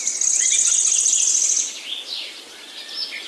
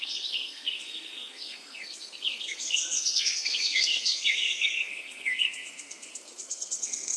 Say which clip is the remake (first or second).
second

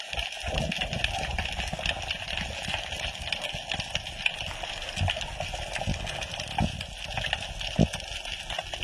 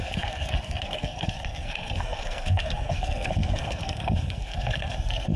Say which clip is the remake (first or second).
second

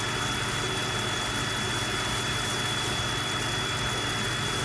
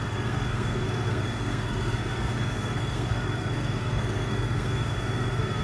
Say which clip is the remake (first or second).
second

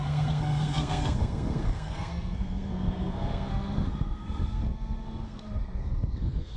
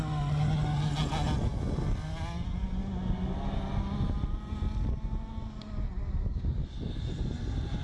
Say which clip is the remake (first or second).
first